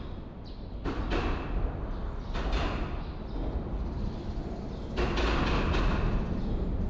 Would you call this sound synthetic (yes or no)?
no